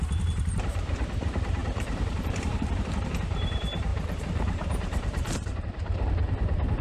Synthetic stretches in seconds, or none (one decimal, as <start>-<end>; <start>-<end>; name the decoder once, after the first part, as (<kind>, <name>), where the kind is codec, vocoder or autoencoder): 0.0-6.8 (vocoder, BigVGAN v2)